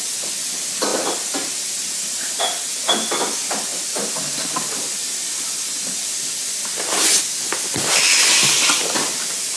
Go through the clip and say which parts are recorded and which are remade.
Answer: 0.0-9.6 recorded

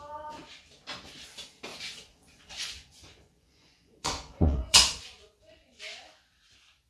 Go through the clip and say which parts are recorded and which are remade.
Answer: 0.0-1.7 recorded; 1.7-5.8 remade; 5.8-6.9 recorded

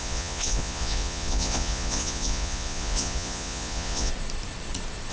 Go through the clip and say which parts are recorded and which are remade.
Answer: 0.0-4.1 remade; 4.1-5.1 recorded